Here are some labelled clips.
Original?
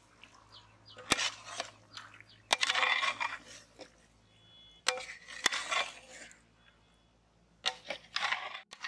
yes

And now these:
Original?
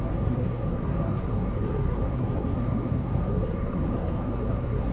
no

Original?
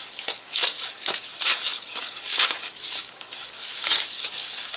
no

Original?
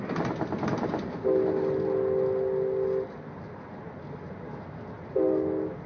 yes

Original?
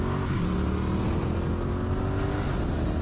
yes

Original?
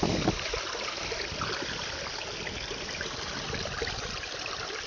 yes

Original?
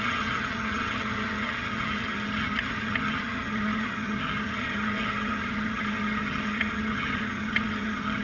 no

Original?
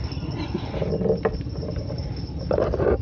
yes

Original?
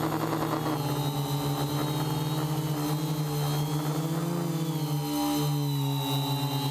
yes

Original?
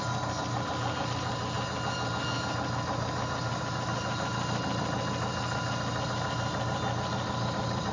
yes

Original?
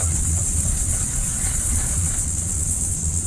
no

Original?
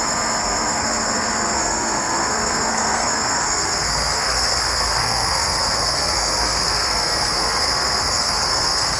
no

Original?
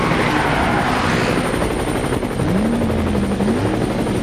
yes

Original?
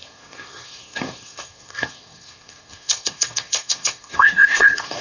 no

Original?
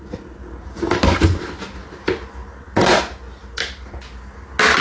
yes